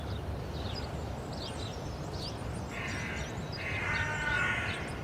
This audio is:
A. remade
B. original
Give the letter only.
B